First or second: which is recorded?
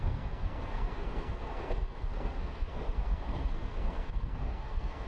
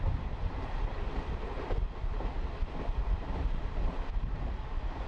second